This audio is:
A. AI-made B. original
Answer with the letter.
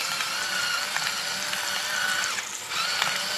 B